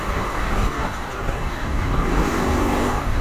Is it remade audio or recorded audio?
remade